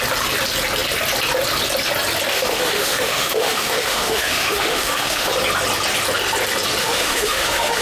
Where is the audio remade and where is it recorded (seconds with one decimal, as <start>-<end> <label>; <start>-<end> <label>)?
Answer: 0.0-2.3 recorded; 2.3-5.3 remade; 5.3-6.8 recorded; 6.8-7.8 remade